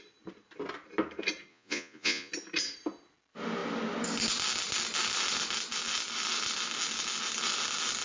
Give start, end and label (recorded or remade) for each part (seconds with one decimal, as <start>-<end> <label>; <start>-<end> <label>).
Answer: 0.0-1.5 recorded; 1.5-2.3 remade; 2.3-8.0 recorded